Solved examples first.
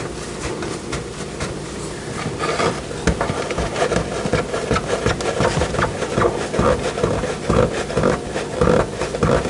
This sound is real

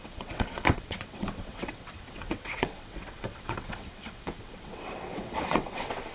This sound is fake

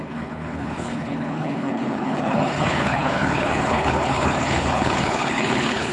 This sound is fake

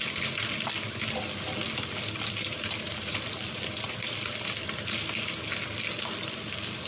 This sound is real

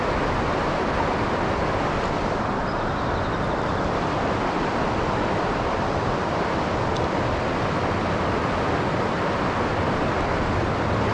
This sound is real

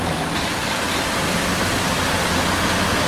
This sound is fake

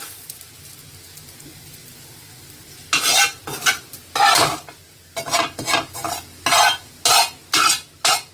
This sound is real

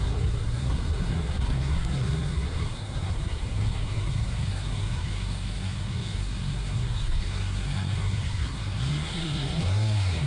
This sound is fake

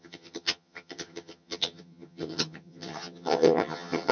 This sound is fake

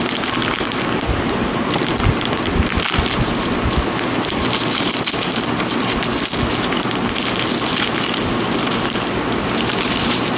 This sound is real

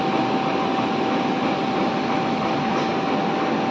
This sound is real